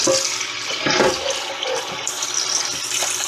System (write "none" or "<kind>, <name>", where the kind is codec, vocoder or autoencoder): none